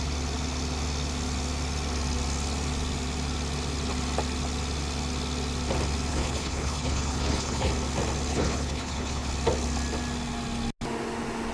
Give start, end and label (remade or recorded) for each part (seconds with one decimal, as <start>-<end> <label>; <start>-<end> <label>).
0.0-6.1 recorded; 6.1-7.7 remade; 7.7-8.3 recorded; 8.3-9.3 remade; 9.3-11.5 recorded